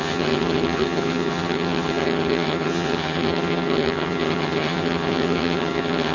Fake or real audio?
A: fake